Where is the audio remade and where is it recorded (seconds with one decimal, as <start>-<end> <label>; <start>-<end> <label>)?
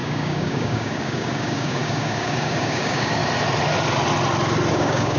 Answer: 0.0-3.2 remade; 3.2-4.7 recorded; 4.7-5.2 remade